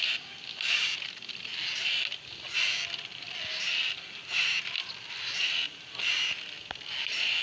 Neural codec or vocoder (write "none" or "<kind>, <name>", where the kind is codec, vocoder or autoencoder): none